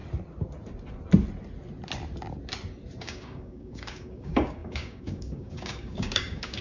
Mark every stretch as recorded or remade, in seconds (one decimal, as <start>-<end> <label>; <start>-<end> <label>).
0.0-3.0 recorded; 3.0-6.6 remade